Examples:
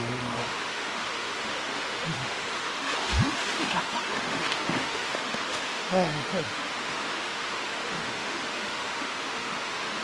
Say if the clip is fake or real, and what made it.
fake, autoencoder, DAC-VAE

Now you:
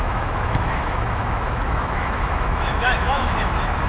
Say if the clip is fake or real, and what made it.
fake, autoencoder, DAC-VAE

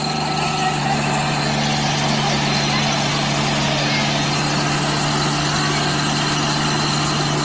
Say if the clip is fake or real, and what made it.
real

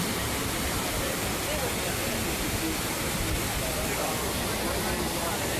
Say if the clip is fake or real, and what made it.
real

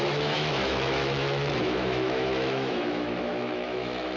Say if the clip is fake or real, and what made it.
fake, autoencoder, DAC-VAE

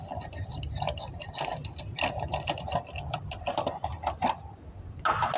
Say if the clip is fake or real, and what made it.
real